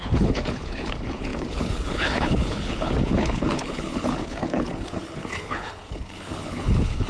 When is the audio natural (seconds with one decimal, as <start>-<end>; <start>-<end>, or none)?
none